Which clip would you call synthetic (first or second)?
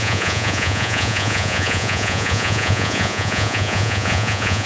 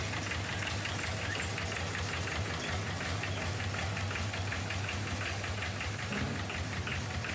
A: first